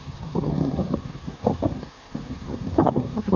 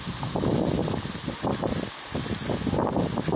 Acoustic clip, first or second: second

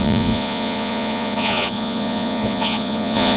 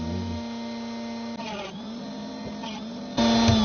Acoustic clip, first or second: second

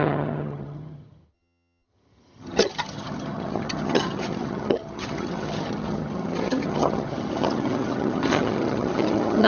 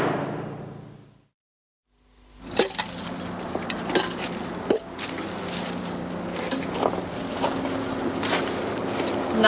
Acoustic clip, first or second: second